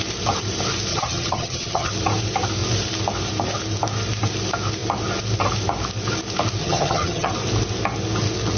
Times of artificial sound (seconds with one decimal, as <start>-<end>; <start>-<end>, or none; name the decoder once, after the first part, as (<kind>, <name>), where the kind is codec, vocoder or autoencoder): 0.9-1.9 (vocoder, HiFi-GAN); 6.6-7.3